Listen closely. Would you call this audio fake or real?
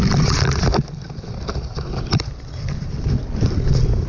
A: real